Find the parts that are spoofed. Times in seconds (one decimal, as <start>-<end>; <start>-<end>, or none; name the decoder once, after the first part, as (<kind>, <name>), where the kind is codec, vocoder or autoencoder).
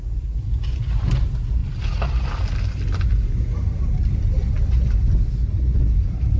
none